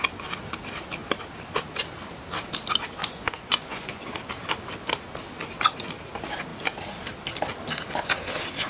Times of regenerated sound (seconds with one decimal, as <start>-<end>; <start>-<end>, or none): 3.0-4.0